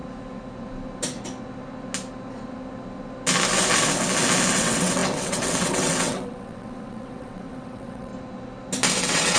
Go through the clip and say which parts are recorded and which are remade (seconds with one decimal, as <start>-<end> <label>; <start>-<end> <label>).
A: 0.0-4.5 recorded; 4.5-8.1 remade; 8.1-9.0 recorded; 9.0-9.4 remade